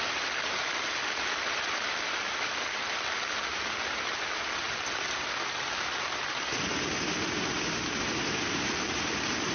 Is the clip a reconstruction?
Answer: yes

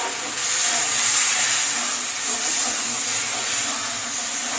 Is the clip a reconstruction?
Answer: no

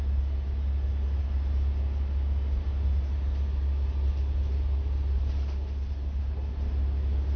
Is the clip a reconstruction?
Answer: no